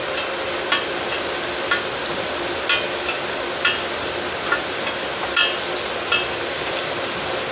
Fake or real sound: real